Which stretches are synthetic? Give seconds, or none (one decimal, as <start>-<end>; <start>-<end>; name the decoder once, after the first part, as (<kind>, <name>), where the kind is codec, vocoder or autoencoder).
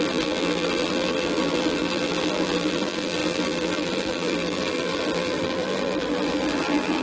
0.0-7.0 (vocoder, BigVGAN v2)